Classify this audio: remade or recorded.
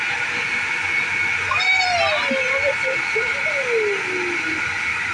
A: recorded